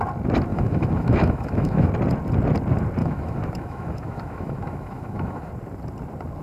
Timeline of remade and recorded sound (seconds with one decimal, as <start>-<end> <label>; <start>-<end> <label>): 0.0-0.5 recorded; 0.5-1.9 remade; 1.9-3.0 recorded; 3.0-5.5 remade; 5.5-6.4 recorded

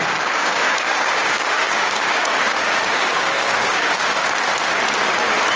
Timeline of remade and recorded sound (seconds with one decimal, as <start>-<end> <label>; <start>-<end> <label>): 0.0-4.2 remade; 4.2-5.6 recorded

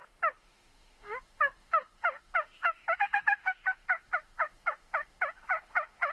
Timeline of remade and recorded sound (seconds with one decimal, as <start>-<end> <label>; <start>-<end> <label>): 0.0-6.1 remade

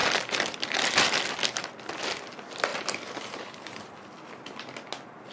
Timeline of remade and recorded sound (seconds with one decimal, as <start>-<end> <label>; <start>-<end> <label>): 0.0-2.7 recorded; 2.7-3.9 remade; 3.9-5.3 recorded

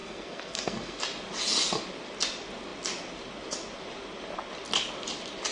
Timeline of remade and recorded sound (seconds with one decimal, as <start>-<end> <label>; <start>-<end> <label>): 0.0-1.0 remade; 1.0-5.5 recorded

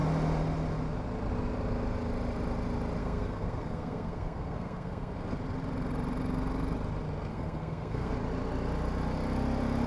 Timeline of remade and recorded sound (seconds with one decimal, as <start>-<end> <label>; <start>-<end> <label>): 0.0-3.0 recorded; 3.0-5.1 remade; 5.1-7.3 recorded; 7.3-8.1 remade; 8.1-9.9 recorded

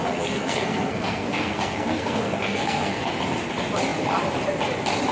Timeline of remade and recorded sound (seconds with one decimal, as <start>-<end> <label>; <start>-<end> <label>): 0.0-3.1 remade; 3.1-5.1 recorded